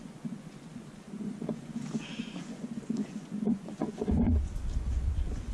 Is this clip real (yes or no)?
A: no